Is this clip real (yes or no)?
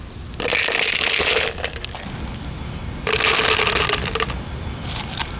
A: yes